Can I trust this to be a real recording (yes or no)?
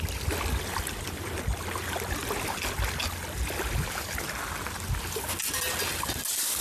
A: yes